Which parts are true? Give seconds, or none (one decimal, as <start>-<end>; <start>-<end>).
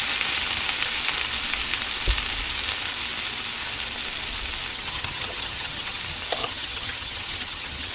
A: 0.0-4.7; 6.0-6.4